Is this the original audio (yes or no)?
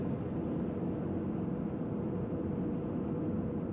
yes